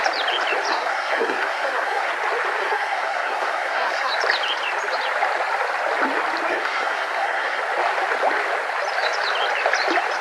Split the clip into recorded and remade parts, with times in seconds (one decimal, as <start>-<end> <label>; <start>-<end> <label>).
0.0-0.7 recorded; 0.7-2.1 remade; 2.1-2.6 recorded; 2.6-4.1 remade; 4.1-6.5 recorded; 6.5-7.6 remade; 7.6-10.2 recorded